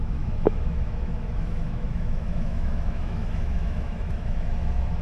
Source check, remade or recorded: remade